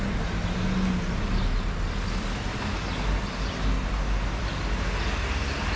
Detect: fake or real real